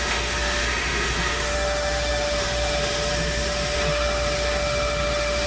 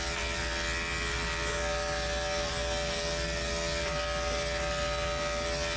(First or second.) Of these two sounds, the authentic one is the second